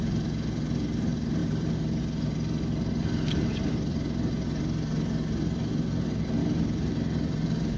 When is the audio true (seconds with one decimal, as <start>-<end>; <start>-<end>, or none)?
0.0-1.4; 2.0-6.4